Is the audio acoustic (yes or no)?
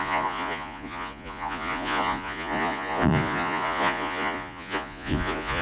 no